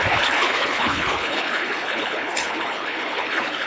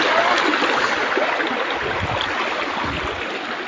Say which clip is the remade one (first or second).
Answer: first